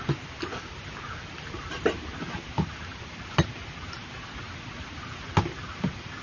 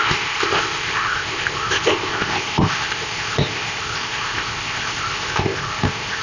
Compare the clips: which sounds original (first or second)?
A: first